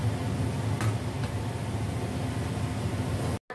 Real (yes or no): yes